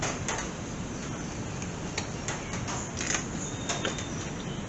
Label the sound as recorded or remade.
recorded